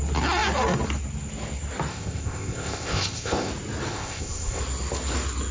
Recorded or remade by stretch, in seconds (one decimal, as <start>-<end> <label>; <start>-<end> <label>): 0.0-1.9 recorded; 1.9-3.5 remade; 3.5-3.9 recorded; 3.9-4.6 remade; 4.6-5.5 recorded